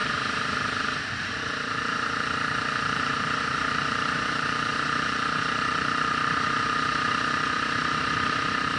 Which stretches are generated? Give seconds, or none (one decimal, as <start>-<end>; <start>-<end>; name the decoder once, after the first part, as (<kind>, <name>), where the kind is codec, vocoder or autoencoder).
1.1-8.8 (vocoder, BigVGAN v2)

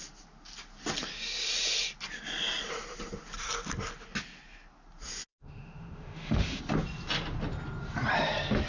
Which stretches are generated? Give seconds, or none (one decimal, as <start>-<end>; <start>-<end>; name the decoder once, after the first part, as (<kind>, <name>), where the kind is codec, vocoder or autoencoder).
5.3-6.6 (autoencoder, DAC-VAE)

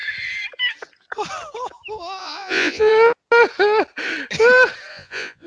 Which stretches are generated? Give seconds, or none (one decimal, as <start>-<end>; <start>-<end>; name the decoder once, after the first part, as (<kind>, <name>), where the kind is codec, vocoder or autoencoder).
2.2-2.9 (vocoder, Vocos); 4.9-5.5

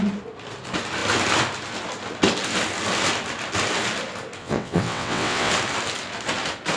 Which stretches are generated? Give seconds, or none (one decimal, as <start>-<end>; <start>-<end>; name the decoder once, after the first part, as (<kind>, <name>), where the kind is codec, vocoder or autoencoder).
4.4-5.5 (vocoder, WaveNeXt)

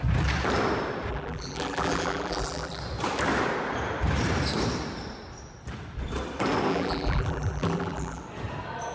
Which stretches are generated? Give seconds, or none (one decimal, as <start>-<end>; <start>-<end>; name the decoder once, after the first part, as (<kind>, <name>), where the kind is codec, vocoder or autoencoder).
1.1-2.8 (vocoder, BigVGAN v2); 6.7-8.2

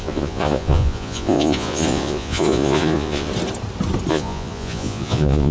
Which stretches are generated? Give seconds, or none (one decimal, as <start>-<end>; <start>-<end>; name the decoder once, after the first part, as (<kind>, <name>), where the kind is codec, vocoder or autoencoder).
0.0-3.3 (vocoder, Vocos); 4.1-5.5

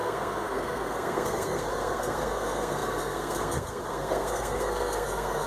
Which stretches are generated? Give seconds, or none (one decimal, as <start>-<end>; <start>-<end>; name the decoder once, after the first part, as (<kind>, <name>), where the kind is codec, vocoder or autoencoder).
0.0-5.5 (codec, SNAC)